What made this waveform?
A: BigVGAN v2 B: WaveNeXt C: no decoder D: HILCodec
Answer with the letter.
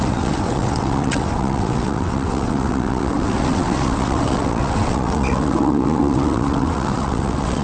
B